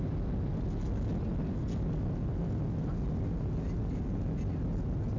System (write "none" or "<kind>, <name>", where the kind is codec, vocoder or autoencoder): none